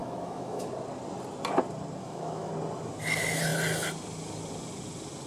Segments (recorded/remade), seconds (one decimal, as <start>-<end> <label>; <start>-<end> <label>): 0.0-0.7 remade; 0.7-2.0 recorded; 2.0-2.5 remade; 2.5-5.3 recorded